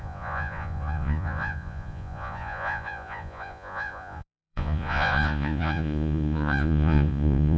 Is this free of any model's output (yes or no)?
no